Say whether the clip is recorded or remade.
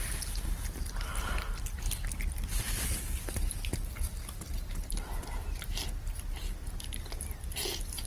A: recorded